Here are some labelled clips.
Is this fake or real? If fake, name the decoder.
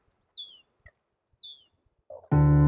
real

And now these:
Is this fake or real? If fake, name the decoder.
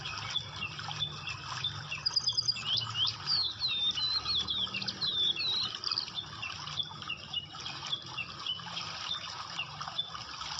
real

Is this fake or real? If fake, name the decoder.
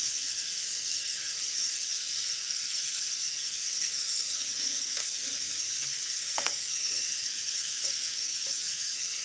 fake, codec, SNAC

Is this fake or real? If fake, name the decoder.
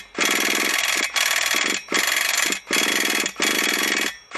real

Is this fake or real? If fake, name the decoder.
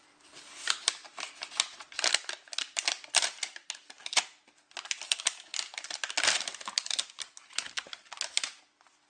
real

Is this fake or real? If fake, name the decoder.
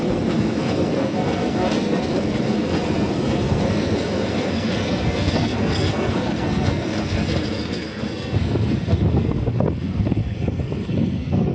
fake, codec, SNAC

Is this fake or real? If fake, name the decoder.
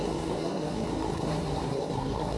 fake, codec, SNAC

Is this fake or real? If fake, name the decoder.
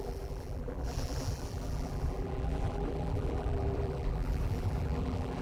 fake, vocoder, BigVGAN v2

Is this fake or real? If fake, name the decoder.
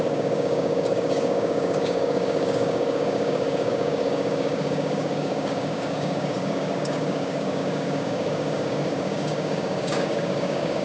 fake, codec, DAC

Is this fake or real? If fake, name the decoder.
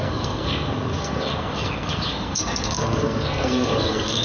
fake, codec, SNAC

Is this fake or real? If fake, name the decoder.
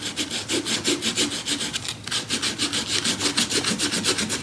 real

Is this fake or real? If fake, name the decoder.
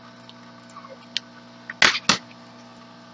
real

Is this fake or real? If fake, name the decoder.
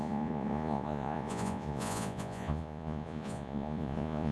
fake, vocoder, Vocos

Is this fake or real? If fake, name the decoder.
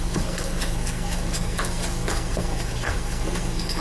fake, codec, SNAC